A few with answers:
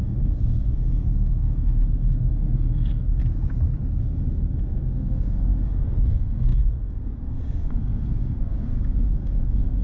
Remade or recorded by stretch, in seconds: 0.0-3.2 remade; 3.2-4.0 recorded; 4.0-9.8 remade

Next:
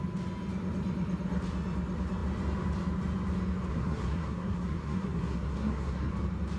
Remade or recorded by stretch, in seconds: 0.0-3.7 recorded; 3.7-6.1 remade; 6.1-6.6 recorded

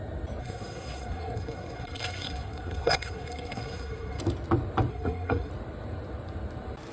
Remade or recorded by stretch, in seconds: 0.0-0.4 recorded; 0.4-4.2 remade; 4.2-4.9 recorded; 4.9-5.5 remade; 5.5-6.9 recorded

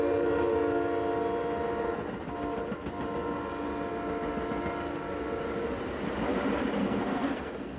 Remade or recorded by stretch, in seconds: 0.0-6.8 recorded; 6.8-7.8 remade

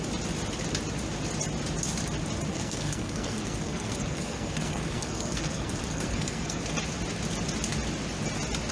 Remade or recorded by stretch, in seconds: 0.0-2.5 recorded; 2.5-6.6 remade; 6.6-8.7 recorded